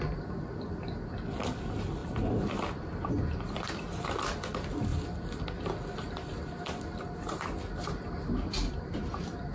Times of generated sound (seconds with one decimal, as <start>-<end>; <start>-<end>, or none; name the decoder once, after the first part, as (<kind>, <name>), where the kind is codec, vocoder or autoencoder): none